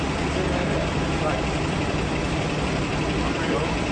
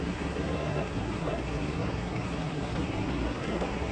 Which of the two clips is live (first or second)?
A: first